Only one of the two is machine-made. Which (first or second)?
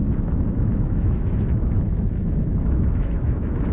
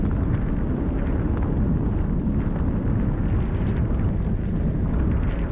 first